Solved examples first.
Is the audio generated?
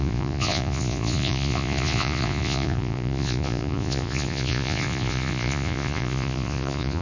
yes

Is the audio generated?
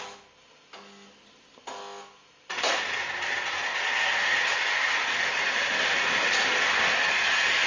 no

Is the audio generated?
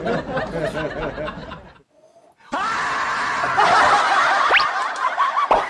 no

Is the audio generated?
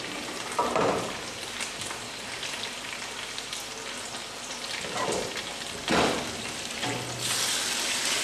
no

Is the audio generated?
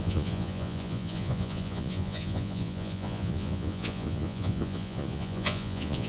yes